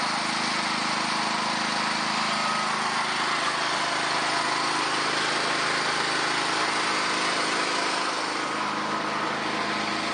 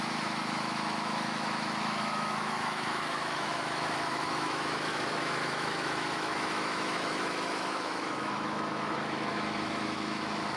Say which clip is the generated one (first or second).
second